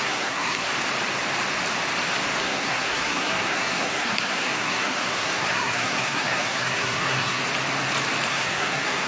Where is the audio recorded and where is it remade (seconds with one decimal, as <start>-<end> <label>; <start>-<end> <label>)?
0.0-0.7 remade; 0.7-2.4 recorded; 2.4-7.4 remade; 7.4-8.3 recorded; 8.3-9.1 remade